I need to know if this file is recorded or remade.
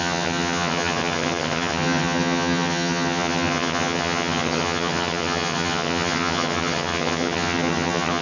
remade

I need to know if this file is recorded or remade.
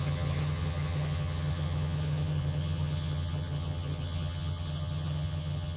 remade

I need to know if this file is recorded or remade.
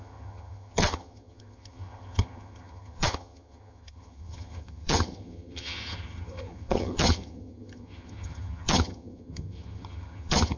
remade